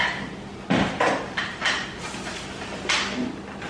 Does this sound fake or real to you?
real